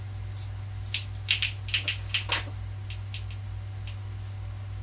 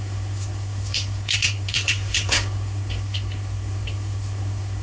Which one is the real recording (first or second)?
first